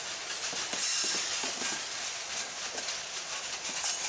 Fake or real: real